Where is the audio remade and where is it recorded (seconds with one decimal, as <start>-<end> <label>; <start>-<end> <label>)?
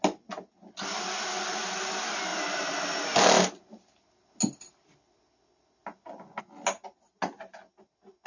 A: 0.0-8.3 recorded